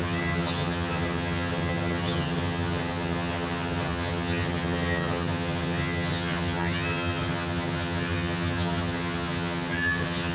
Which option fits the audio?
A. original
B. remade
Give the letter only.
B